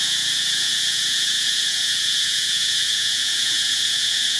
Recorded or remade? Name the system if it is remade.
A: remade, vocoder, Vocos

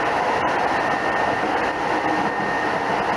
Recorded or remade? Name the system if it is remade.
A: recorded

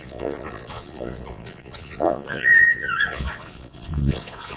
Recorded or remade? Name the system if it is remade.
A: remade, vocoder, Vocos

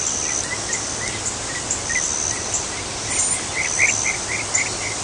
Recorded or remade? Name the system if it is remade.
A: recorded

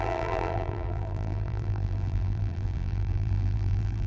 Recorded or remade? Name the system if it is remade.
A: remade, vocoder, BigVGAN v2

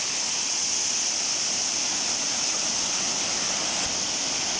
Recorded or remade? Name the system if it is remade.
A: recorded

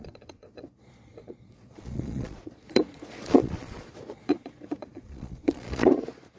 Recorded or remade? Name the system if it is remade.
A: remade, vocoder, Vocos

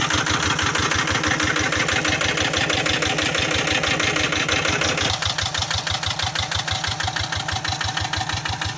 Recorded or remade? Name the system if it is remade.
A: recorded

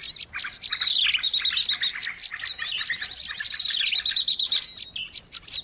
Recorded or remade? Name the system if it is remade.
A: recorded